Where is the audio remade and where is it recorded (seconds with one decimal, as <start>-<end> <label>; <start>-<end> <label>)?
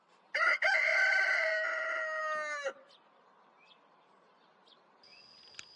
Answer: 0.0-5.8 recorded